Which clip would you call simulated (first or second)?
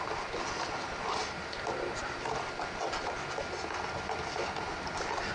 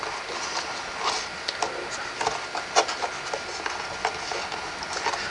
first